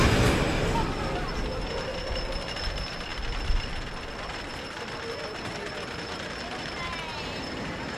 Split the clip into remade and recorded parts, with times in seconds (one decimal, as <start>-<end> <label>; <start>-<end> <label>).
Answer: 0.0-8.0 recorded